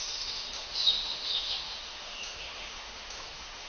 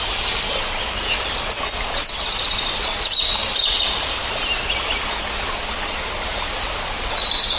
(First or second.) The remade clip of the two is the first